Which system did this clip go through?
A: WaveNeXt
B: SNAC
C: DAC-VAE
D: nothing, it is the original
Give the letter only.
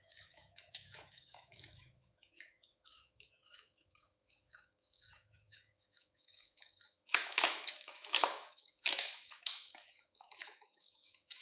C